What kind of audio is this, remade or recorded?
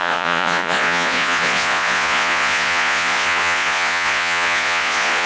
remade